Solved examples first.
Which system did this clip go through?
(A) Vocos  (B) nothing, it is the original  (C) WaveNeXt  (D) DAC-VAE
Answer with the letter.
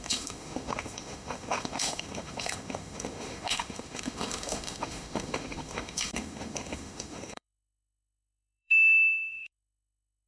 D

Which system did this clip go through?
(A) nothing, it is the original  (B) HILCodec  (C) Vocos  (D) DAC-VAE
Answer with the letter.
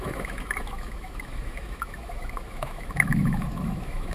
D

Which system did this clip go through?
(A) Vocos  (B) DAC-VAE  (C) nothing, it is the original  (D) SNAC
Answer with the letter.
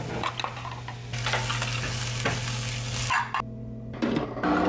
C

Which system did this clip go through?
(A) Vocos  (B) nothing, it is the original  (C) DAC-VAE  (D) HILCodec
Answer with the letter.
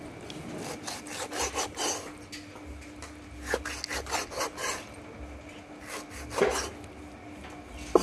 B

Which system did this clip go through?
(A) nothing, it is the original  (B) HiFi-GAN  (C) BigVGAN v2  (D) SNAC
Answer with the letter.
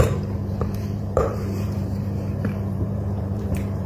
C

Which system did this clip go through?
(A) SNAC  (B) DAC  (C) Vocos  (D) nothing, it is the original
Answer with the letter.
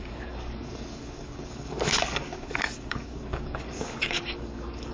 B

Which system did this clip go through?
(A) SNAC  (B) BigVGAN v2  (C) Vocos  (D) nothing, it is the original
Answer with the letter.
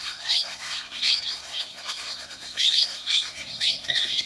A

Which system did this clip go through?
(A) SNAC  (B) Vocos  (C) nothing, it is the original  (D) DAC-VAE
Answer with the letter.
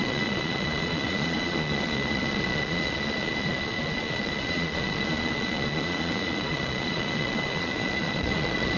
B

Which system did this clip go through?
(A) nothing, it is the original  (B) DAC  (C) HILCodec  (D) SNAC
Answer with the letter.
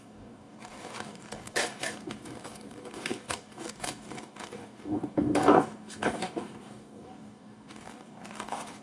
B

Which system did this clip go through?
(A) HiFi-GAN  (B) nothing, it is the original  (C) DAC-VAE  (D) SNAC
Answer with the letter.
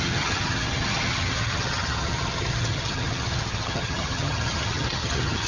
A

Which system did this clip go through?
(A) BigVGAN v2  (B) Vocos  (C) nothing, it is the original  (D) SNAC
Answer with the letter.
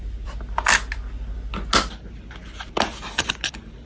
C